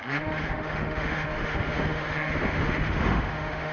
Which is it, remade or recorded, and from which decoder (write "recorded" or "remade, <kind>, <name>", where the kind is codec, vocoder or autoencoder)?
remade, autoencoder, DAC-VAE